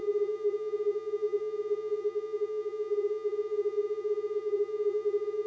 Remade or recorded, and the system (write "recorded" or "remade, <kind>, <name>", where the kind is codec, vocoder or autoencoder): remade, vocoder, Vocos